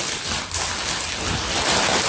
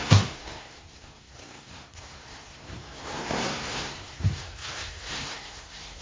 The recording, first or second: first